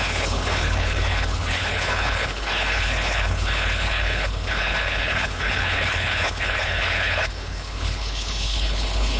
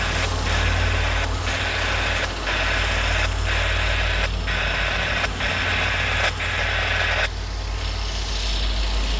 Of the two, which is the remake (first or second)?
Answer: first